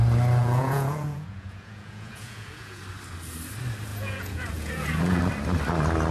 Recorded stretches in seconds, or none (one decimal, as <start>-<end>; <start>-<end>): 0.0-0.4; 2.8-3.9; 5.2-6.1

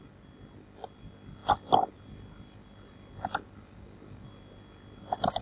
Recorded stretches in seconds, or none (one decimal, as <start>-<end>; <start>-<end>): 0.0-5.4

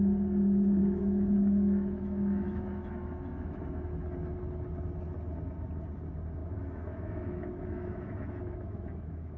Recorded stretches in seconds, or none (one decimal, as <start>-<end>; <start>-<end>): 0.0-0.8; 3.6-6.4

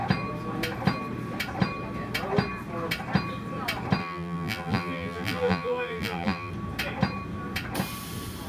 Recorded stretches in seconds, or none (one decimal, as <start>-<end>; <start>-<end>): 0.0-4.0; 6.5-8.5